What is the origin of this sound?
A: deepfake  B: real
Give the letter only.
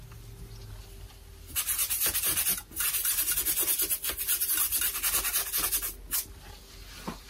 B